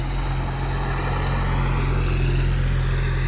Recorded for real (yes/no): yes